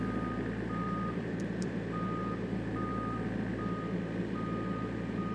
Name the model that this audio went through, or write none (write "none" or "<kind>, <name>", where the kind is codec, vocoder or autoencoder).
vocoder, BigVGAN v2